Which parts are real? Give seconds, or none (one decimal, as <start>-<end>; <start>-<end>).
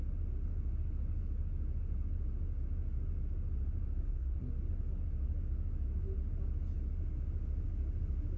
0.0-4.0; 4.5-8.4